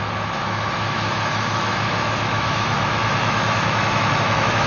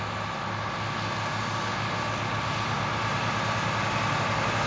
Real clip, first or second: second